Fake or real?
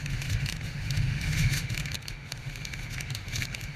fake